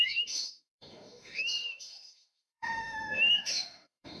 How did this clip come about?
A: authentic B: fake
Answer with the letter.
B